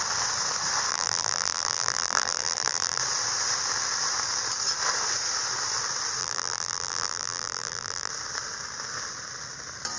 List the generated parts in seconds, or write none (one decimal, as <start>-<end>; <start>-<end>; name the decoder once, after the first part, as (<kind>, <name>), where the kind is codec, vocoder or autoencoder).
0.9-3.0 (vocoder, BigVGAN v2); 6.2-8.1